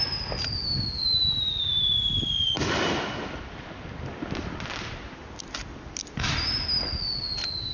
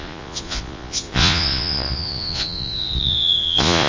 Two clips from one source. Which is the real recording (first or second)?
first